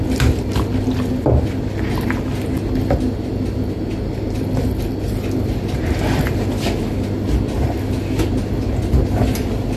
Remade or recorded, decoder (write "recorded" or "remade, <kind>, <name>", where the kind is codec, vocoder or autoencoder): recorded